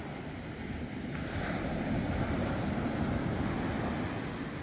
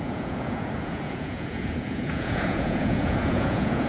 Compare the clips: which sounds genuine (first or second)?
first